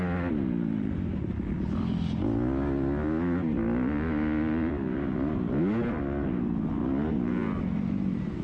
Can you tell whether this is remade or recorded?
recorded